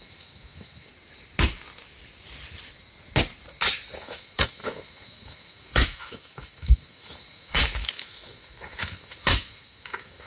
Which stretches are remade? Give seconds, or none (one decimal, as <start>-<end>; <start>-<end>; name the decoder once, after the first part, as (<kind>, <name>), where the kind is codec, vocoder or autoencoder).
0.0-0.9 (autoencoder, DAC-VAE); 4.0-10.3